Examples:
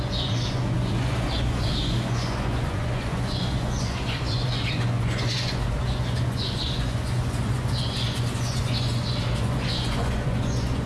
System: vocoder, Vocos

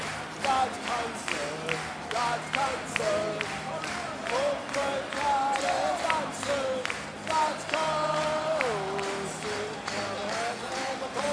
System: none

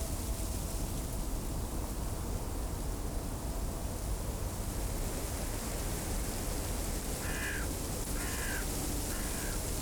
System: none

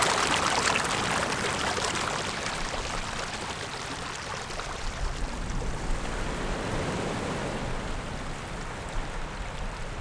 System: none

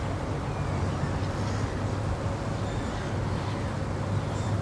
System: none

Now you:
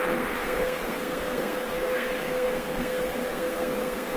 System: codec, SNAC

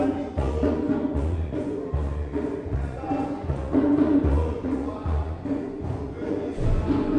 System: vocoder, Vocos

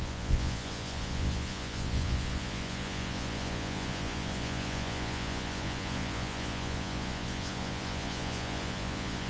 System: vocoder, Vocos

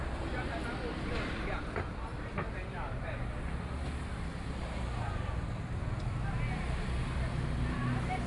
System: none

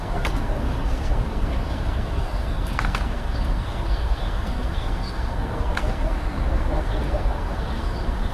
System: codec, SNAC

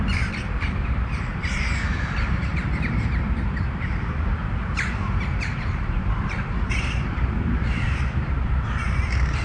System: vocoder, BigVGAN v2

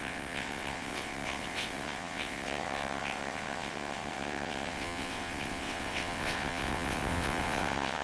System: vocoder, WaveNeXt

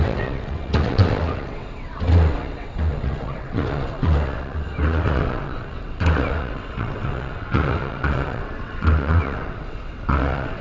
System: vocoder, WaveNeXt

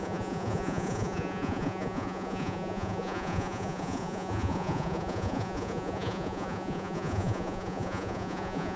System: vocoder, Vocos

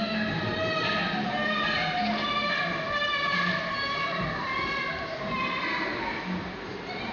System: none